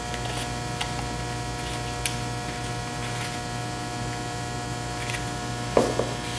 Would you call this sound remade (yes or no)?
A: no